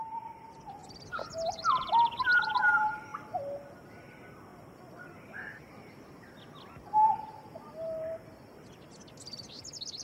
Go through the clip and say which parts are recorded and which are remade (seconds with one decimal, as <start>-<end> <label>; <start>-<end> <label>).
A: 0.0-10.0 recorded